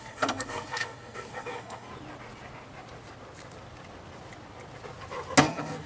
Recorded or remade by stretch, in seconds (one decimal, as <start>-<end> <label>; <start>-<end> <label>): 0.0-1.9 remade; 1.9-5.4 recorded; 5.4-5.9 remade